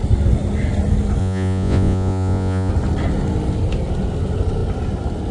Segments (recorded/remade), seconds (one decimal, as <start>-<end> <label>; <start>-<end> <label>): 0.0-1.2 recorded; 1.2-2.7 remade; 2.7-5.3 recorded